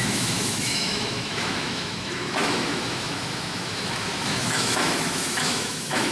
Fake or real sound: fake